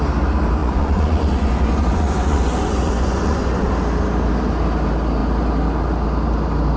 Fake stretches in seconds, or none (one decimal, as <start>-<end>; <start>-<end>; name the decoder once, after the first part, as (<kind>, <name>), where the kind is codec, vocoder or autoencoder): 0.6-3.7 (vocoder, Vocos)

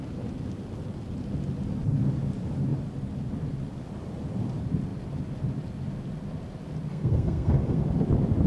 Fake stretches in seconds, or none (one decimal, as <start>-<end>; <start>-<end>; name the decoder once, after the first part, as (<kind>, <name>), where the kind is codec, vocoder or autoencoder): 6.9-7.8 (codec, SNAC)